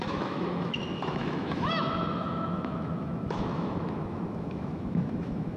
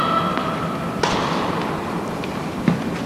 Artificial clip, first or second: first